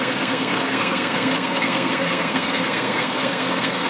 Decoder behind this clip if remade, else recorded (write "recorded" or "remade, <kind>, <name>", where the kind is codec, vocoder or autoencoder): remade, codec, SNAC